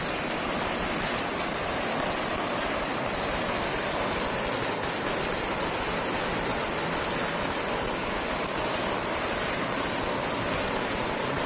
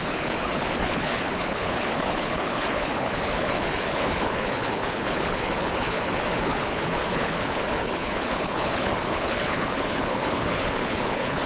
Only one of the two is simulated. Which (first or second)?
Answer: second